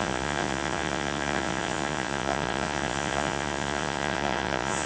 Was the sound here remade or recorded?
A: remade